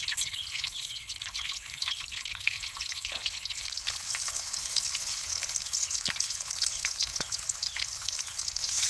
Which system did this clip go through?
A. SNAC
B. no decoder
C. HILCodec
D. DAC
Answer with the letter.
C